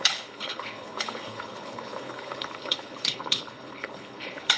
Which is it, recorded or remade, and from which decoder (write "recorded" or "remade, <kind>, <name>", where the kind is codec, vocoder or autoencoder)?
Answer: remade, codec, HILCodec